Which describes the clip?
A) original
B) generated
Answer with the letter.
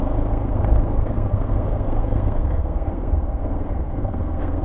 B